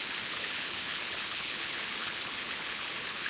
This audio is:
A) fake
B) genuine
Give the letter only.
A